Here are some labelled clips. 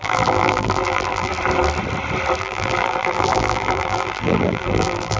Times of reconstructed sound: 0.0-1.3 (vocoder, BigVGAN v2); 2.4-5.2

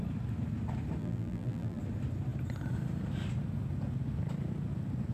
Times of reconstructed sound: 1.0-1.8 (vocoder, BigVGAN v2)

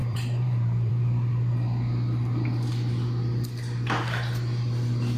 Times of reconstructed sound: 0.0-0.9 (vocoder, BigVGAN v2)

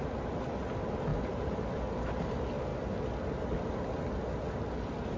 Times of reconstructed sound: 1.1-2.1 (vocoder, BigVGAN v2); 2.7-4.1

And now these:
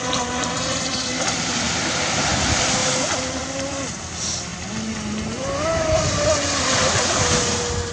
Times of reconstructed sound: none

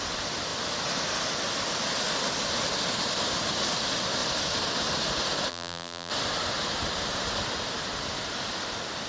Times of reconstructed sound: 5.5-6.1 (vocoder, BigVGAN v2)

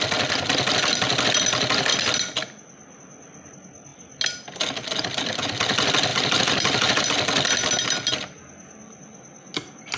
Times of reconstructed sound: 6.1-7.0 (vocoder, BigVGAN v2)